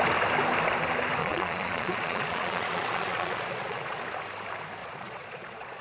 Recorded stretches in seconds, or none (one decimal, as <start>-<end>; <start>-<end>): 0.0-1.2; 4.0-4.8